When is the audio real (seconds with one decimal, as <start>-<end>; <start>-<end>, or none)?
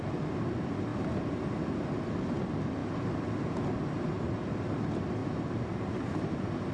0.0-5.2; 6.2-6.7